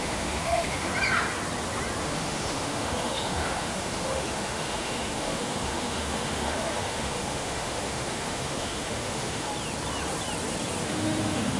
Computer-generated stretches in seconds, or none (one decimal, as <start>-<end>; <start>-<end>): 0.0-0.9; 2.0-9.5; 10.8-11.6